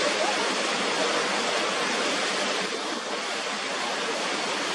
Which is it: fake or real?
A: real